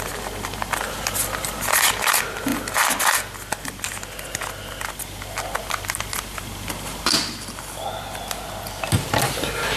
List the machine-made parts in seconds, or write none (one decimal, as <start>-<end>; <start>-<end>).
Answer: none